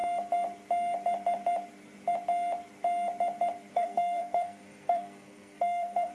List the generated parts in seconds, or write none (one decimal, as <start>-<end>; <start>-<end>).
3.7-6.1